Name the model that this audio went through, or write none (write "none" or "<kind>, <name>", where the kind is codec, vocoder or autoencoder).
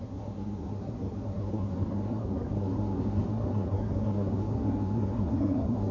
codec, SNAC